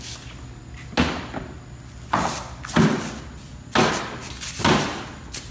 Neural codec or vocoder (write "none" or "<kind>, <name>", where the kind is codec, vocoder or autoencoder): none